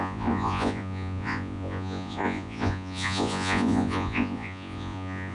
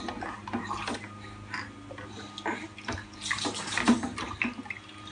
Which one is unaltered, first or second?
second